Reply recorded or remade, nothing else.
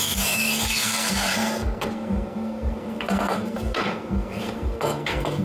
remade